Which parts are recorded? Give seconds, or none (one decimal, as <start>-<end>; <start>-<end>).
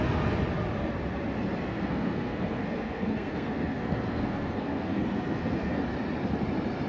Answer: 0.0-1.7; 5.8-6.9